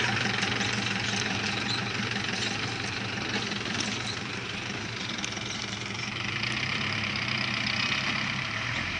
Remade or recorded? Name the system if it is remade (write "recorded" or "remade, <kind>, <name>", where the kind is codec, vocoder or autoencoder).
remade, vocoder, BigVGAN v2